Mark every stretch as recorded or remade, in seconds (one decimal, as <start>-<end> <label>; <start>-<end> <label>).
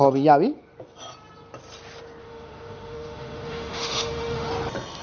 0.0-2.2 recorded; 2.2-4.5 remade; 4.5-5.0 recorded